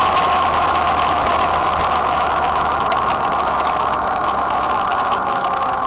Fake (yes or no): yes